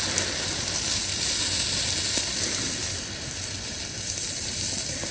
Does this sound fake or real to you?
real